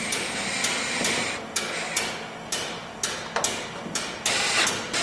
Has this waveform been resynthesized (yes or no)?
no